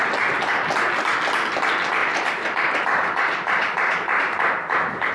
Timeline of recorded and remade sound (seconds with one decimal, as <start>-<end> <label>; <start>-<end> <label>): 0.0-2.0 recorded; 2.0-5.1 remade